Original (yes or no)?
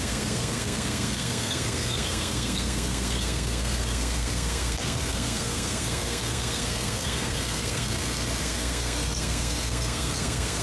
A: no